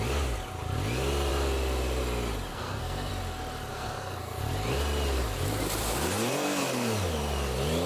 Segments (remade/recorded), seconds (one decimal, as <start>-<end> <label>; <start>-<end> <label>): 0.0-2.5 recorded; 2.5-3.1 remade; 3.1-3.7 recorded; 3.7-4.4 remade; 4.4-7.9 recorded